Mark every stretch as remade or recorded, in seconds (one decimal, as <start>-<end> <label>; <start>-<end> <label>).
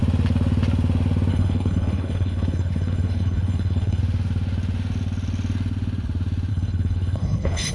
0.0-1.3 recorded; 1.3-4.0 remade; 4.0-6.5 recorded; 6.5-7.7 remade